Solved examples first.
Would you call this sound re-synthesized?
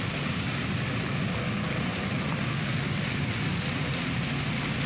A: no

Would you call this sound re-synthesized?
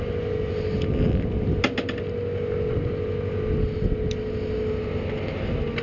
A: no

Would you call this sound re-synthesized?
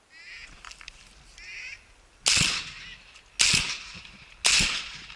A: no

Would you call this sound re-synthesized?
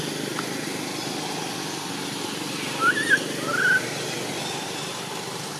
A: no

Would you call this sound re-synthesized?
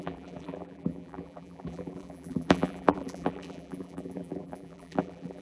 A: yes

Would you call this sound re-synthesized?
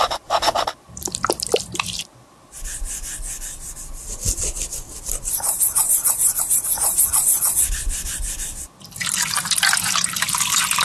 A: yes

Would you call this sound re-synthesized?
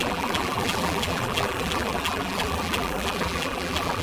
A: yes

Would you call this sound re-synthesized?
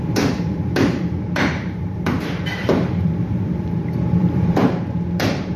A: yes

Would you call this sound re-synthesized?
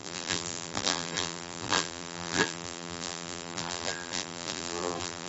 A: yes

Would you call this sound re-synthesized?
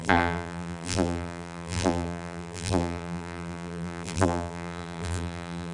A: yes